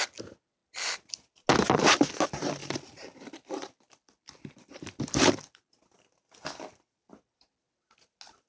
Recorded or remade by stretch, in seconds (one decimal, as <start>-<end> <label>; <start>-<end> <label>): 0.0-2.6 recorded; 2.6-5.7 remade; 5.7-8.5 recorded